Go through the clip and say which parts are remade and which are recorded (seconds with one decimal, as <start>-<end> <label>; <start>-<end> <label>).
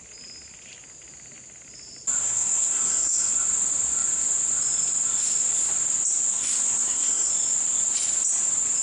0.0-2.2 recorded; 2.2-3.3 remade; 3.3-6.3 recorded; 6.3-7.3 remade; 7.3-8.8 recorded